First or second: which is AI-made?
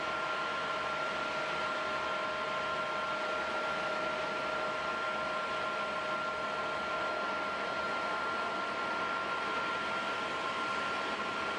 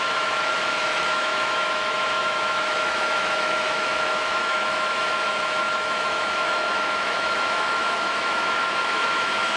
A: second